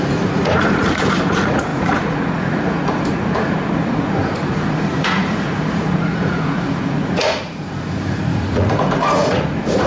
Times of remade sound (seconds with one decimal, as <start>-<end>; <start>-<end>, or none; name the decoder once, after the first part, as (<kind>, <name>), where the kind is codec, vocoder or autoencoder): 0.0-9.9 (vocoder, Vocos)